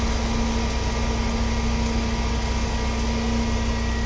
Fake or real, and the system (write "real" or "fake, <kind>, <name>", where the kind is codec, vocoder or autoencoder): real